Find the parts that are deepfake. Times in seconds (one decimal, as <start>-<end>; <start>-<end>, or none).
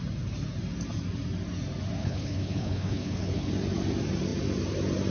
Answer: 2.0-3.5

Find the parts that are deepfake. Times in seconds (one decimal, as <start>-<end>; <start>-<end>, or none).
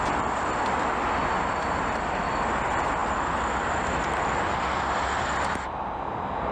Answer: none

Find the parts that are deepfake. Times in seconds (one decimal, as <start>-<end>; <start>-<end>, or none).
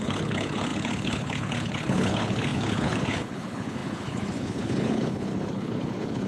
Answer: 0.0-6.3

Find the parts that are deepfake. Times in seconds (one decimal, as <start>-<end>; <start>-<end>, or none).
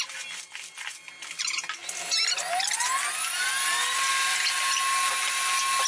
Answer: none